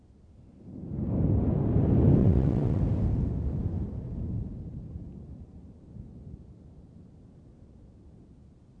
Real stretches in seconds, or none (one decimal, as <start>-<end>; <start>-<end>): 0.0-2.2; 2.8-8.8